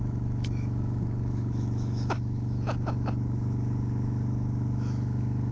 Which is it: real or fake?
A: fake